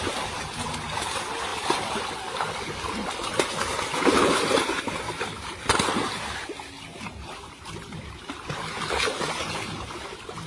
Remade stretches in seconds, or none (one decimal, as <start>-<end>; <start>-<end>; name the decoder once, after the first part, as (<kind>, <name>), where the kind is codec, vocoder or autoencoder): none